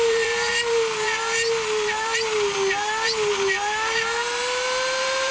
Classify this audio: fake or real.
fake